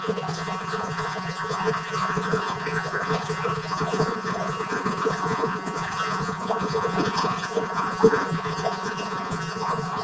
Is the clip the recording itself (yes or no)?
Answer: no